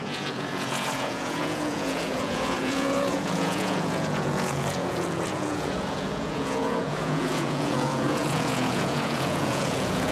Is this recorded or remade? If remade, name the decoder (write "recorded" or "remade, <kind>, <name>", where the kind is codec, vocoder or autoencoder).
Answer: remade, vocoder, Vocos